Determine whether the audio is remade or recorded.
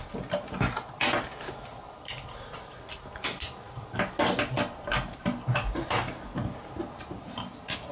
recorded